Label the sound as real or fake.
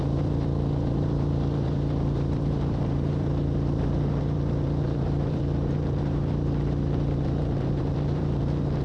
fake